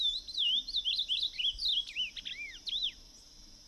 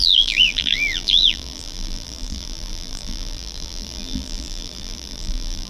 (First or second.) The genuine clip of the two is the first